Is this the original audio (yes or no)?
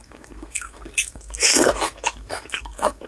no